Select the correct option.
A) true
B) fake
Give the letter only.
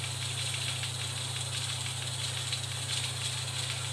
A